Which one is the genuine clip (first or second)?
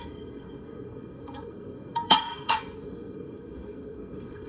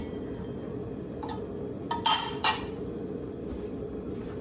second